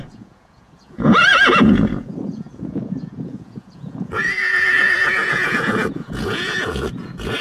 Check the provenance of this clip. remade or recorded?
remade